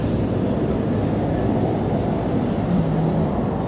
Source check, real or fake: real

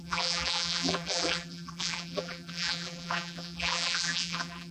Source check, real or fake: fake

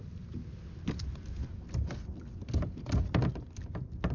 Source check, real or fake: real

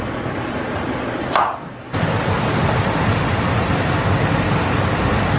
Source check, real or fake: real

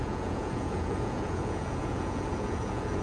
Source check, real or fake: fake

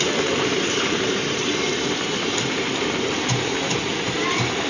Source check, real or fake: fake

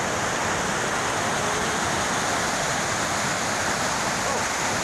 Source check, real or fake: real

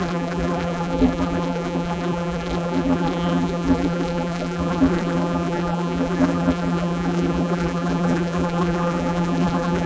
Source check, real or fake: fake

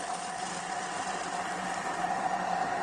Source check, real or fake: real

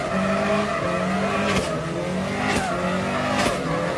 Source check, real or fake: real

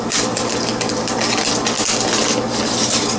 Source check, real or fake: fake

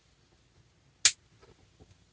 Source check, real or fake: real